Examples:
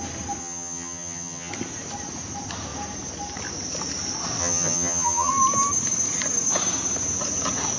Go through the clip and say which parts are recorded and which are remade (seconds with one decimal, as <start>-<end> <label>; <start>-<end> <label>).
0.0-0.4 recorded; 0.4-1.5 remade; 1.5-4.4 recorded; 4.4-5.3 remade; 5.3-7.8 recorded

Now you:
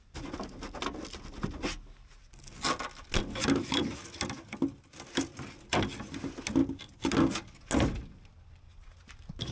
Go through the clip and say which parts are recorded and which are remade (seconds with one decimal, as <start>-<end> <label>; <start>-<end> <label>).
0.0-9.5 recorded

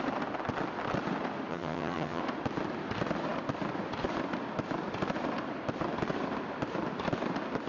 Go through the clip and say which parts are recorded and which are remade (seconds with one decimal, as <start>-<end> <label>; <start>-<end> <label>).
0.0-1.5 recorded; 1.5-2.2 remade; 2.2-7.7 recorded